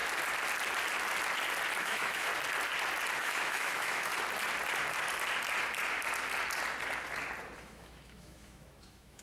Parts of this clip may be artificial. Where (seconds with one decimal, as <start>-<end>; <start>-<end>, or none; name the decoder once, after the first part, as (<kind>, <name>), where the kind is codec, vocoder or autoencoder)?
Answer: 1.8-2.3 (autoencoder, DAC-VAE); 3.2-4.1; 7.6-9.2